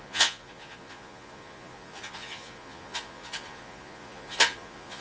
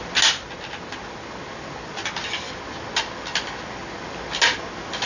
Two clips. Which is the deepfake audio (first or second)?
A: first